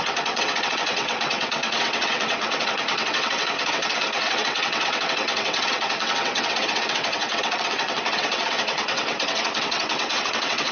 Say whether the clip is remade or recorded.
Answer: remade